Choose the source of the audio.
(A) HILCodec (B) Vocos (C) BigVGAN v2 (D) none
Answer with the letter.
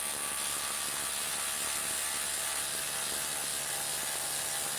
D